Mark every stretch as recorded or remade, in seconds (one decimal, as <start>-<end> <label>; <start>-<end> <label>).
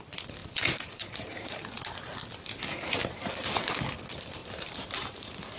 0.0-0.4 recorded; 0.4-1.5 remade; 1.5-4.4 recorded; 4.4-5.6 remade